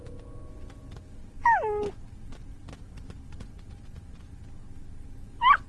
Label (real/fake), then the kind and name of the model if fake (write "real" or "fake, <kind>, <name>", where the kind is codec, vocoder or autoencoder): real